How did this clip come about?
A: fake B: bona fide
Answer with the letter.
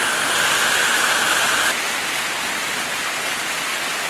B